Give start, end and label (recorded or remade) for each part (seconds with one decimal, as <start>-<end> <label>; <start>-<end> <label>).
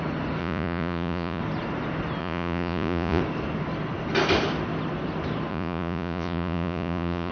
0.0-0.4 recorded; 0.4-1.4 remade; 1.4-2.2 recorded; 2.2-3.2 remade; 3.2-5.5 recorded; 5.5-7.3 remade